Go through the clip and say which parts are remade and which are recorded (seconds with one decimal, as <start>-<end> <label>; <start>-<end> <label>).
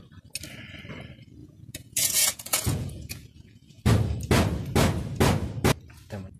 0.0-1.4 recorded; 1.4-3.8 remade; 3.8-6.4 recorded